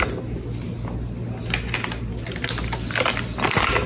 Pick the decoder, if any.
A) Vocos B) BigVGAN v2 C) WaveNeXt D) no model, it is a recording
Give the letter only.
D